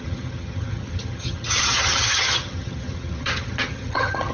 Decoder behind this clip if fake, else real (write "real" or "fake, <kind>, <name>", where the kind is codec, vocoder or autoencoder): fake, vocoder, HiFi-GAN